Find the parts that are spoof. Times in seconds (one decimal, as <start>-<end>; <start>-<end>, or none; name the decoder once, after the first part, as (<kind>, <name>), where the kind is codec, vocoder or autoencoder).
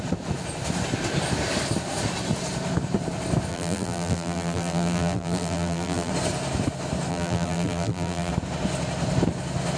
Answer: 3.5-6.1 (vocoder, BigVGAN v2); 7.1-8.3